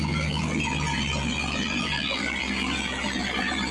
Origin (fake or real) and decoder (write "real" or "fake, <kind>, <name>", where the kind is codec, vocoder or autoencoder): fake, vocoder, BigVGAN v2